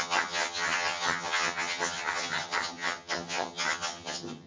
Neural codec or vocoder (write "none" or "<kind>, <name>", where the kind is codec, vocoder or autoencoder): vocoder, HiFi-GAN